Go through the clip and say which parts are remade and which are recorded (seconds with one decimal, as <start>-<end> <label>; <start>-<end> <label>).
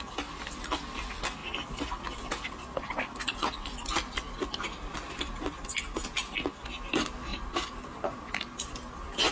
0.0-7.3 recorded; 7.3-8.2 remade; 8.2-9.3 recorded